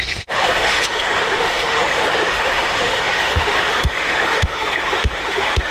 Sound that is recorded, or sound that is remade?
remade